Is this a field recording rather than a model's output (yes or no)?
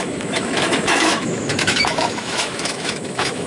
no